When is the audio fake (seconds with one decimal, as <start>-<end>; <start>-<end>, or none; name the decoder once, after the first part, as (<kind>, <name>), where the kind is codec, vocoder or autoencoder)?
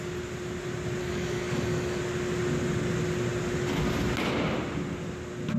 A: 1.0-2.0 (codec, DAC)